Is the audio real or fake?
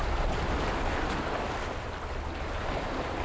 real